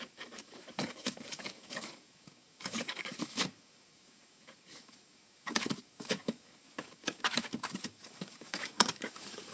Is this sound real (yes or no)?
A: no